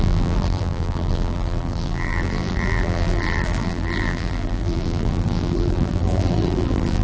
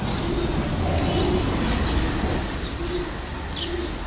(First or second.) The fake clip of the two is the first